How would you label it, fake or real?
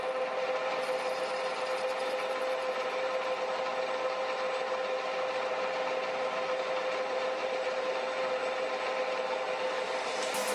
real